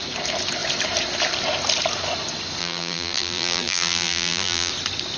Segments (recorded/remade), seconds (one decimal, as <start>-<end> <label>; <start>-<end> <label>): 0.0-2.6 recorded; 2.6-4.7 remade; 4.7-5.2 recorded